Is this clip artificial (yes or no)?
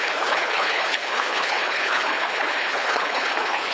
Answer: yes